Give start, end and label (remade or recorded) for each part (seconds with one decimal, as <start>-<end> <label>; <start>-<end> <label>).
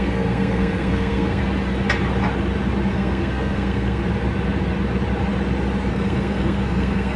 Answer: 0.0-1.4 remade; 1.4-2.9 recorded; 2.9-4.0 remade; 4.0-5.9 recorded; 5.9-7.2 remade